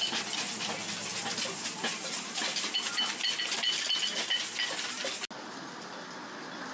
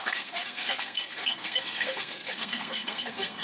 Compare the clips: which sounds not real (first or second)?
second